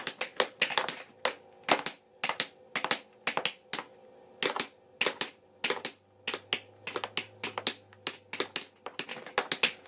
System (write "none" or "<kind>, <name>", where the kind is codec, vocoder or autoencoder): none